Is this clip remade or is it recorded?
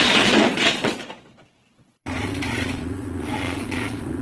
remade